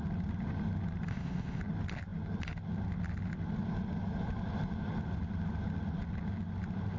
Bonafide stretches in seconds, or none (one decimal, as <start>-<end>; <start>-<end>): 0.0-1.1; 1.6-7.0